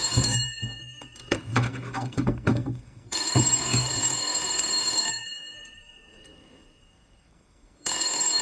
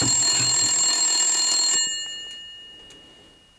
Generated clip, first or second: first